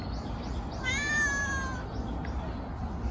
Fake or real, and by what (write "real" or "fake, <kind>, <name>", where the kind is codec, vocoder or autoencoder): real